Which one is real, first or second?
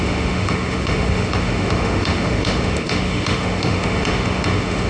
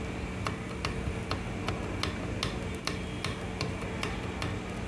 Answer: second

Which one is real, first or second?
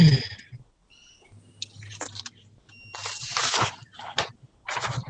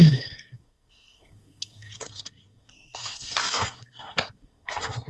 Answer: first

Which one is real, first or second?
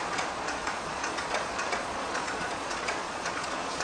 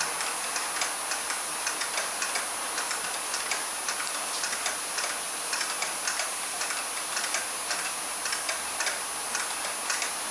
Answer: second